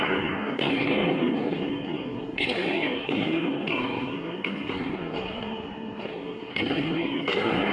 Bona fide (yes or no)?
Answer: no